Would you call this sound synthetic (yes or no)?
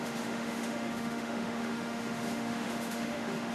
yes